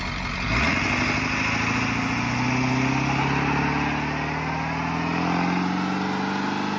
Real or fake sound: real